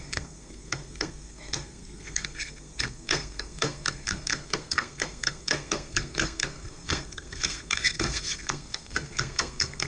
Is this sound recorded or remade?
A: remade